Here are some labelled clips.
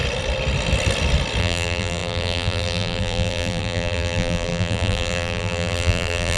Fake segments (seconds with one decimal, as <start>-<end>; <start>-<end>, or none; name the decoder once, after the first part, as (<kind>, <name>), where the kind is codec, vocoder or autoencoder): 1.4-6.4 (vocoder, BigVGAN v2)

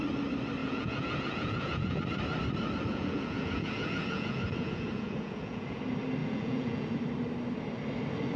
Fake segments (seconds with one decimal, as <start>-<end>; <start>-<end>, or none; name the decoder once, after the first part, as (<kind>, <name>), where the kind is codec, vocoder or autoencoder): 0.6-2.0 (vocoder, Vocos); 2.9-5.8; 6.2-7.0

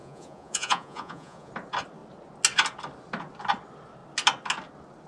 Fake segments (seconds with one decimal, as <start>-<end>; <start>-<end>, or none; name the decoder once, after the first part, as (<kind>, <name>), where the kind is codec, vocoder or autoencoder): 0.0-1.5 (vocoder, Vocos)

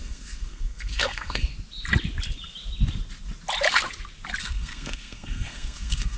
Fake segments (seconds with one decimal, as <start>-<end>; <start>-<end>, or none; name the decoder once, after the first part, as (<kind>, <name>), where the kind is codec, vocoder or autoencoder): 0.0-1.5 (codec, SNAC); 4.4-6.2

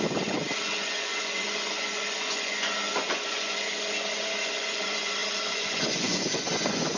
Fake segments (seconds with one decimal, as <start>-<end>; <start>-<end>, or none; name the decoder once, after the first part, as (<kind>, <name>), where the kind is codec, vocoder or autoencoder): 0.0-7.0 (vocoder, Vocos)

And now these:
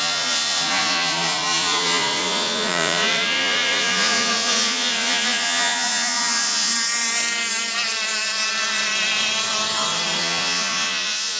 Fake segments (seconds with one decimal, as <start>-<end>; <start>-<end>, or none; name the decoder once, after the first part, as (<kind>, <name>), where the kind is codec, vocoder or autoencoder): 0.0-6.7 (vocoder, Vocos); 10.2-11.4

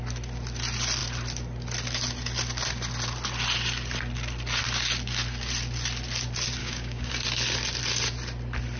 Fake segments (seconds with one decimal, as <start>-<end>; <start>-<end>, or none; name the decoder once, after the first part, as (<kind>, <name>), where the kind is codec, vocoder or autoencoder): 6.6-7.1 (codec, DAC)

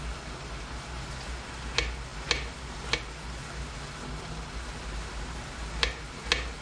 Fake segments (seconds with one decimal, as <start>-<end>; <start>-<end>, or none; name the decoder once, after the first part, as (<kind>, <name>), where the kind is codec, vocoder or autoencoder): none